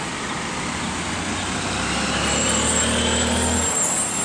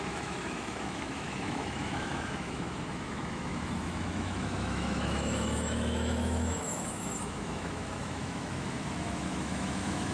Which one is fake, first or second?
second